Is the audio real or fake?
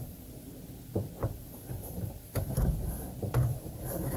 fake